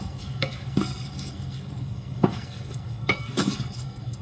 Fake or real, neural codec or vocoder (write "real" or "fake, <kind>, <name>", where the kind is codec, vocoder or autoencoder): fake, codec, SNAC